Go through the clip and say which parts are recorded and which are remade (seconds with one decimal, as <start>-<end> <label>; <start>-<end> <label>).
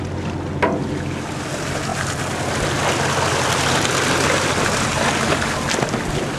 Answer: 0.0-6.4 recorded